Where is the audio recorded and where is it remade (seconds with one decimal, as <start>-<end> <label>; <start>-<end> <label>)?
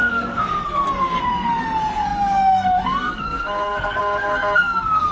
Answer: 0.0-5.1 remade